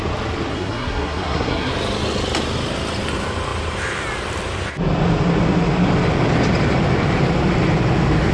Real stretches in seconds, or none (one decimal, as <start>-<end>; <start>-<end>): 0.0-0.5; 1.7-8.3